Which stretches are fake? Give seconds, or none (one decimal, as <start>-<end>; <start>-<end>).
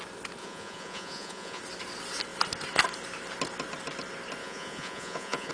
0.4-1.6; 4.4-5.5